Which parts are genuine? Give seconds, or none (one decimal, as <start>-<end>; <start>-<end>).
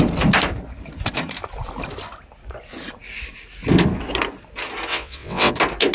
0.0-4.9; 5.5-5.9